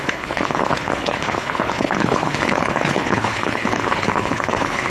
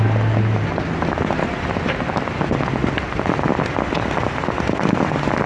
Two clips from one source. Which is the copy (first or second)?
first